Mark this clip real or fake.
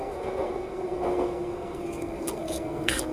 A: fake